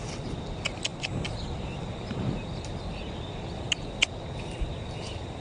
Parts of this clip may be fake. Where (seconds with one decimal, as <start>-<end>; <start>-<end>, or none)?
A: none